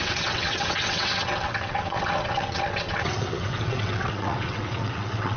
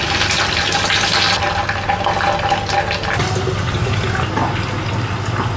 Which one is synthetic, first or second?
first